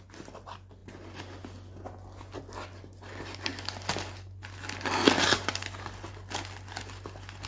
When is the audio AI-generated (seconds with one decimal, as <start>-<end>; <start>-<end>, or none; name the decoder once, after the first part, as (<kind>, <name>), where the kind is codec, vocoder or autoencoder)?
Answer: none